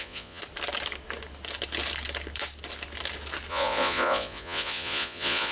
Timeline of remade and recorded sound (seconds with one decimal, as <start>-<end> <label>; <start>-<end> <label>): 0.0-0.4 remade; 0.4-3.5 recorded; 3.5-5.5 remade